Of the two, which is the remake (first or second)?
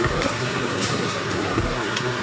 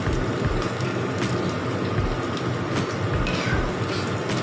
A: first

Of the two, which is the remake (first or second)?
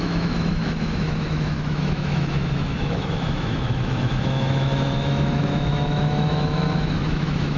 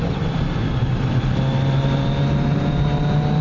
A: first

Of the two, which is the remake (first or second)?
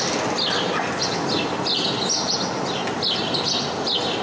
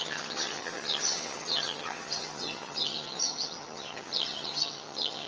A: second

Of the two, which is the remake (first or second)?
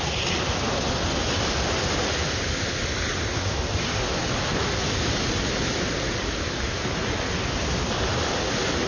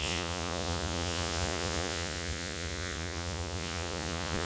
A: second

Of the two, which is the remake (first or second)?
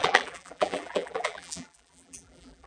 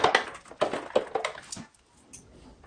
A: first